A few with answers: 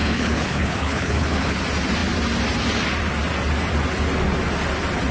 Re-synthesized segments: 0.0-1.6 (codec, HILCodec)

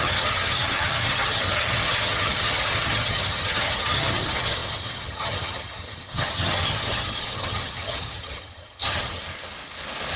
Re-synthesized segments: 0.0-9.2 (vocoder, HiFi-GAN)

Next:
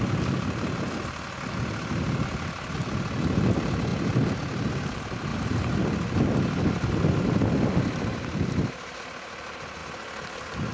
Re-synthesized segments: 5.3-5.8 (vocoder, BigVGAN v2)